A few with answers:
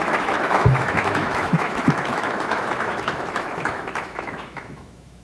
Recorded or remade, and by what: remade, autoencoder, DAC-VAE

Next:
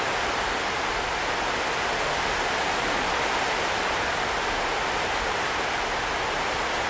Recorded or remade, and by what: recorded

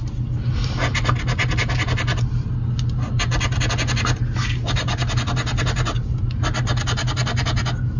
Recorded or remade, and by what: recorded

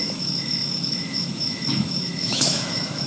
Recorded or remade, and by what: remade, autoencoder, DAC-VAE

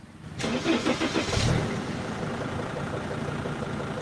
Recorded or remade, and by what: recorded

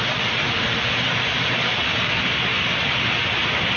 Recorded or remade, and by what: recorded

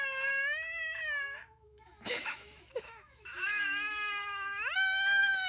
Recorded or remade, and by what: remade, autoencoder, DAC-VAE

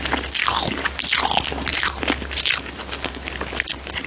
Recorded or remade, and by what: recorded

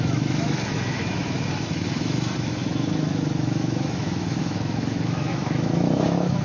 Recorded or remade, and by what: remade, autoencoder, DAC-VAE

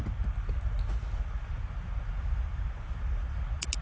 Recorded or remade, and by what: recorded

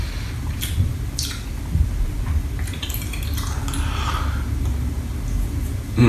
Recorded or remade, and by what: recorded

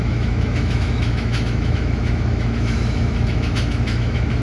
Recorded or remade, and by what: remade, autoencoder, DAC-VAE